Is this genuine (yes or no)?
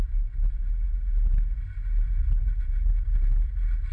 yes